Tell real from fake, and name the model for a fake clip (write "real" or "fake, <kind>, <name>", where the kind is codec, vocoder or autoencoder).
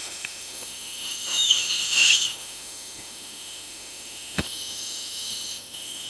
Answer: fake, autoencoder, DAC-VAE